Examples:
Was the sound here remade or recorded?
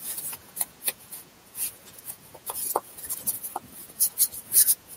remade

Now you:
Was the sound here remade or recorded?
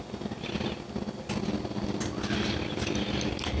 recorded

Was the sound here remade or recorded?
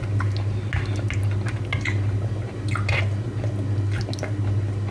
recorded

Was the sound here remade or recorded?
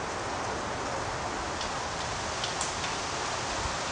recorded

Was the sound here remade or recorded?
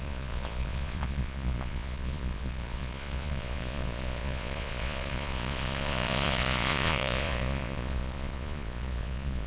remade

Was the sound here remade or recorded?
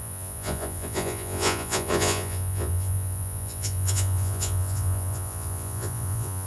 remade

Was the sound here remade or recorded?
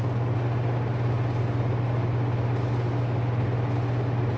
recorded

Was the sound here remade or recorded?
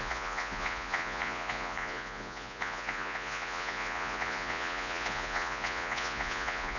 remade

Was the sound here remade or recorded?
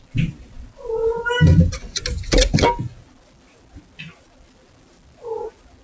recorded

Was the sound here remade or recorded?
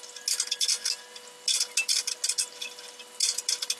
recorded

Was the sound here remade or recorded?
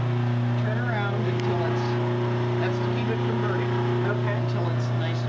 recorded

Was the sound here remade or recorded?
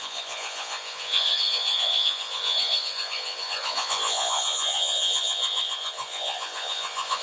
remade